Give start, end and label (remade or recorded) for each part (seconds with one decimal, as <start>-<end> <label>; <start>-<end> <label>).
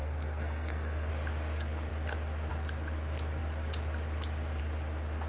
0.0-1.1 remade; 1.1-5.3 recorded